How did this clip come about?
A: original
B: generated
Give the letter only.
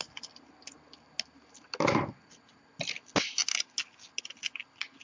A